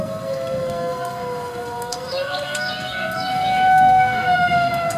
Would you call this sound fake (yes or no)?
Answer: yes